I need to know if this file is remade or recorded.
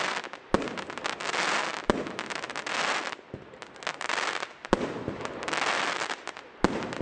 recorded